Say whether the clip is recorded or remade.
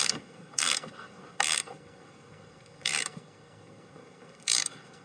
remade